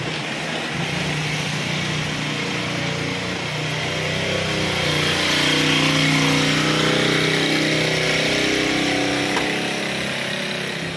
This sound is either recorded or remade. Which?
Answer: recorded